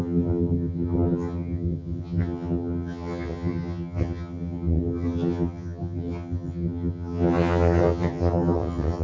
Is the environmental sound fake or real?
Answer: fake